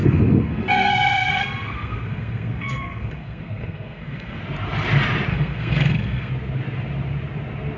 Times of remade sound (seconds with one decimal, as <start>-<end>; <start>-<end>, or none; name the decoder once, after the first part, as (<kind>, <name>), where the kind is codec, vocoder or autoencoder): 0.0-4.4 (codec, SNAC); 5.3-6.3